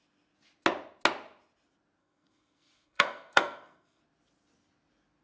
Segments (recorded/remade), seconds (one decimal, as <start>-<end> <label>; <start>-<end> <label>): 0.0-2.0 recorded; 2.0-4.0 remade; 4.0-5.2 recorded